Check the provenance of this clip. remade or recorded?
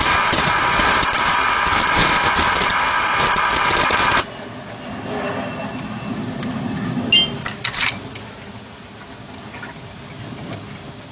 recorded